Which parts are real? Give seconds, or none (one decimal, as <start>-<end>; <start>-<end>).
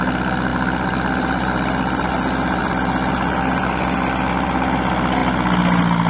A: 0.0-0.5; 2.1-6.1